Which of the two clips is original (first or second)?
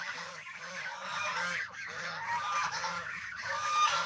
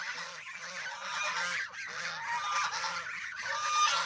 second